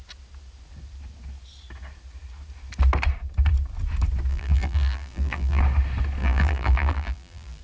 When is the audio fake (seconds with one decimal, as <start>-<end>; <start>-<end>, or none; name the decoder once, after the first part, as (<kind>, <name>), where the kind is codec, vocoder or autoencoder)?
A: 4.3-5.6 (vocoder, BigVGAN v2); 6.2-7.6